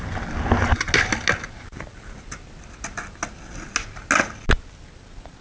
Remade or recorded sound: recorded